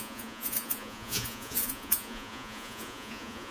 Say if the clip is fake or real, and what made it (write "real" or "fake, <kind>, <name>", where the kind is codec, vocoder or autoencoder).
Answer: fake, vocoder, Vocos